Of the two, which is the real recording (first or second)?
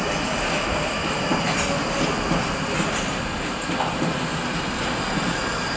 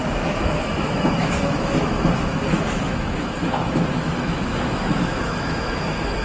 first